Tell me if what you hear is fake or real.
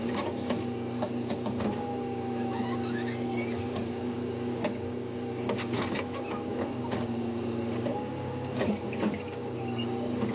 fake